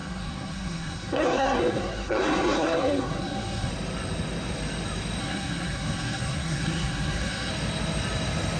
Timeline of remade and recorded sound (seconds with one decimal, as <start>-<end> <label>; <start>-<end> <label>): 0.0-3.7 remade; 3.7-5.2 recorded; 5.2-7.5 remade; 7.5-8.6 recorded